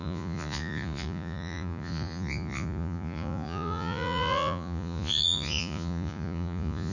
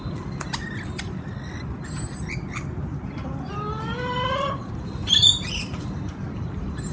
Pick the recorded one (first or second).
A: second